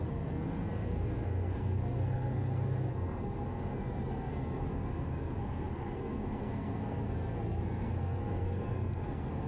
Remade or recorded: remade